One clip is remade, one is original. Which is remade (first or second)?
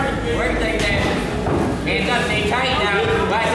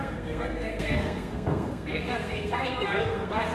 second